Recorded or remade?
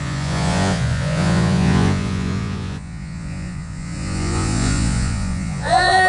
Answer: remade